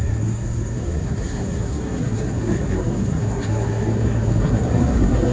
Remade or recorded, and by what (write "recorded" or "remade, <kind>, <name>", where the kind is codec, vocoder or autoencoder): remade, codec, SNAC